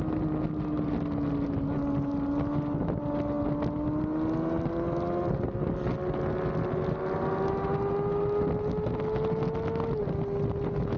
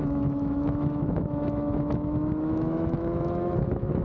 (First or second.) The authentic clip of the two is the first